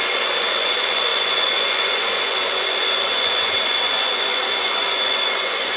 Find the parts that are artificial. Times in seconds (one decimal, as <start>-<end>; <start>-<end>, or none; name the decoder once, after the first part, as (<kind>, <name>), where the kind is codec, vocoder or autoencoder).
0.0-5.8 (vocoder, Vocos)